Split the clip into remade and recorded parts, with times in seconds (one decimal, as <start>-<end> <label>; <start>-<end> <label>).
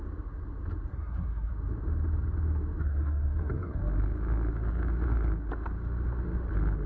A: 0.0-0.9 recorded; 0.9-1.5 remade; 1.5-2.8 recorded; 2.8-3.8 remade; 3.8-6.9 recorded